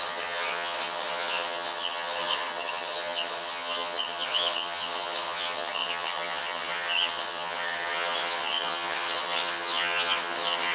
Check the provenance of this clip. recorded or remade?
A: remade